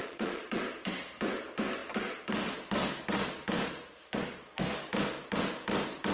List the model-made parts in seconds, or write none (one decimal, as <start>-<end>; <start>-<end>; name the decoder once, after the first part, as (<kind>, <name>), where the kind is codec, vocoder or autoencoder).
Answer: 0.0-0.6 (vocoder, Vocos)